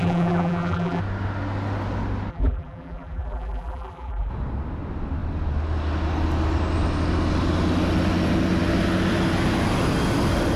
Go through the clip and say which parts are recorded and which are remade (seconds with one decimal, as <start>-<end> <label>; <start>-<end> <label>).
0.0-1.0 remade; 1.0-2.3 recorded; 2.3-4.3 remade; 4.3-10.6 recorded